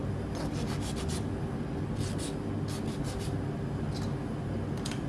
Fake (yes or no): no